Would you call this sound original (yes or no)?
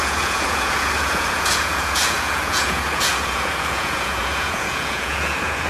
no